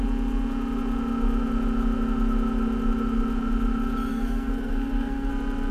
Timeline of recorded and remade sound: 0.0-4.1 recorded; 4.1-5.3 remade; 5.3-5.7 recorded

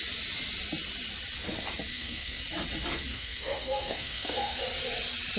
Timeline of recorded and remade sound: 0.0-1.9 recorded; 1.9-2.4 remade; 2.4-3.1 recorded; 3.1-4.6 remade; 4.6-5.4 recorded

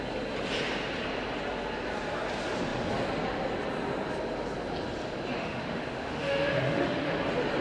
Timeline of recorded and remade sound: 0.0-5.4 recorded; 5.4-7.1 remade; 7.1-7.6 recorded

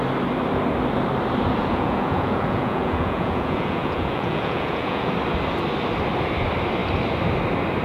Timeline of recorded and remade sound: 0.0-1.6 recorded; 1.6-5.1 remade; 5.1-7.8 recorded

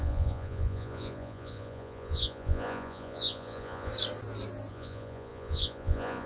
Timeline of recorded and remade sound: 0.0-3.9 remade; 3.9-4.7 recorded; 4.7-6.3 remade

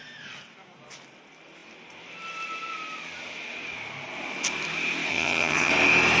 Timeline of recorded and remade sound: 0.0-5.1 recorded; 5.1-5.7 remade; 5.7-6.2 recorded

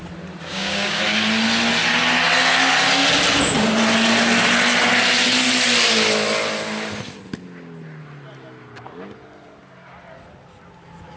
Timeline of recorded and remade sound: 0.0-0.5 recorded; 0.5-1.0 remade; 1.0-11.2 recorded